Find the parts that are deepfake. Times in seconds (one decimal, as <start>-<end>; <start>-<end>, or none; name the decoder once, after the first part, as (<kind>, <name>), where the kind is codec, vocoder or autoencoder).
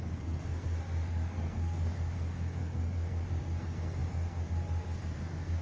0.0-5.6 (codec, SNAC)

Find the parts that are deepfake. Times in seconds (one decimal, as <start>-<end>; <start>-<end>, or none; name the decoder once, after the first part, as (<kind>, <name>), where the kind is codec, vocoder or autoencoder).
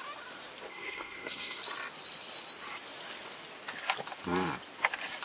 0.7-1.6 (codec, SNAC)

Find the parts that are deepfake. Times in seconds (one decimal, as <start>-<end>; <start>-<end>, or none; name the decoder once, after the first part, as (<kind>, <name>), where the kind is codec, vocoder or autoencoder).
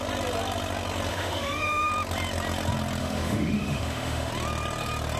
1.1-1.9 (autoencoder, DAC-VAE); 3.0-4.3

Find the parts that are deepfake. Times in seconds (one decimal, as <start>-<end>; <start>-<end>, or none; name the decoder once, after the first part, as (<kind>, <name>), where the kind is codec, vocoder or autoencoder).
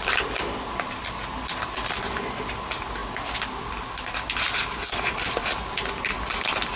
none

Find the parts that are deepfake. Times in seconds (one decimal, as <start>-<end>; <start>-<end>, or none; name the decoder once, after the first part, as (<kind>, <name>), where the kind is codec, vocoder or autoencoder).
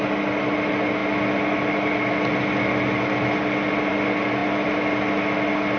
none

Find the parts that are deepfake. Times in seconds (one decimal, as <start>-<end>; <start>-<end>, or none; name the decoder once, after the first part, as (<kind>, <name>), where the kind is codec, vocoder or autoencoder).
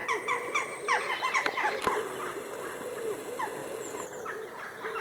none